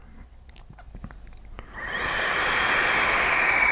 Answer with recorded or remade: recorded